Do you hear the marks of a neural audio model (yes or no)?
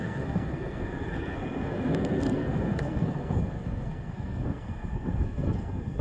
yes